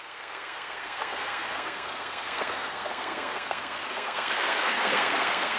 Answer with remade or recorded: remade